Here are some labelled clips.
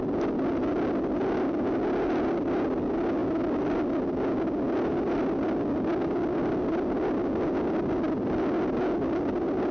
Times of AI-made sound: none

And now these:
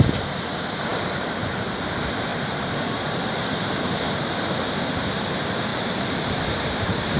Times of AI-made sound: 0.9-1.8 (vocoder, BigVGAN v2); 2.3-2.8; 5.7-7.2

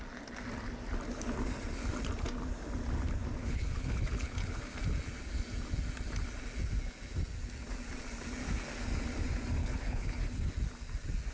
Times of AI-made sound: 3.4-4.6 (codec, HILCodec); 9.6-10.2

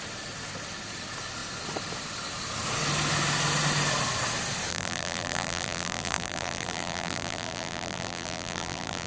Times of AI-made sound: 4.7-9.1 (vocoder, BigVGAN v2)

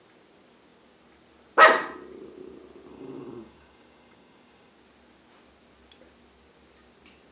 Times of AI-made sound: 2.9-4.7 (codec, DAC)

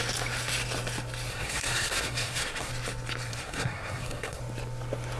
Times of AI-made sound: 1.3-2.7 (codec, SNAC); 3.3-4.4

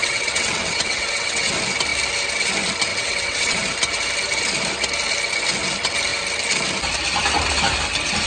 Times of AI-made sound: 0.0-1.5 (vocoder, WaveNeXt); 2.9-3.6

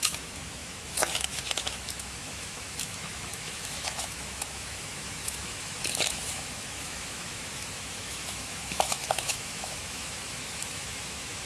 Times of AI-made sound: 0.0-11.5 (autoencoder, DAC-VAE)